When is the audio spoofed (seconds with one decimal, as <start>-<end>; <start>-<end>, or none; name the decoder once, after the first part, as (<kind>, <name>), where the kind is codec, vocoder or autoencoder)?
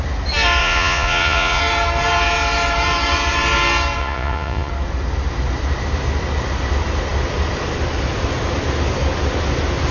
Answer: 0.6-1.6 (vocoder, Vocos); 4.0-4.7